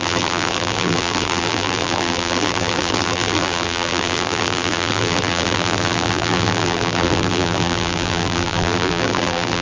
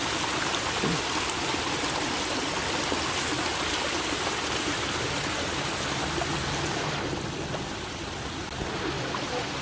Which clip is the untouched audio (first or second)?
second